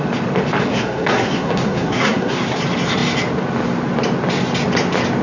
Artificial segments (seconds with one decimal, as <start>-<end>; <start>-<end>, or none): 0.7-2.6